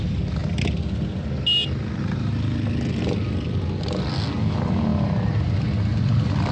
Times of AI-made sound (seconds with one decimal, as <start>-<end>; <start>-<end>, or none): none